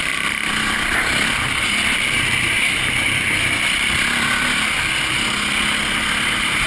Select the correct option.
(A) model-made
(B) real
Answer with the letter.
B